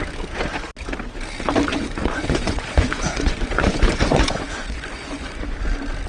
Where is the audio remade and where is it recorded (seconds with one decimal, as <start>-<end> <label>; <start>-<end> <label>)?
0.0-1.7 recorded; 1.7-5.4 remade; 5.4-6.1 recorded